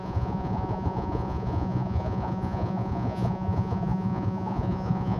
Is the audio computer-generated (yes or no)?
yes